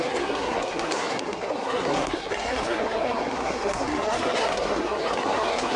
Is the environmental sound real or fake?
fake